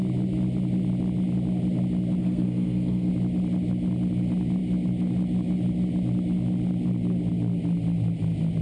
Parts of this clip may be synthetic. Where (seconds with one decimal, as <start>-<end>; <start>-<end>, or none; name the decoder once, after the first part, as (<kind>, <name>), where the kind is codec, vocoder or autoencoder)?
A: 2.2-3.1 (codec, SNAC)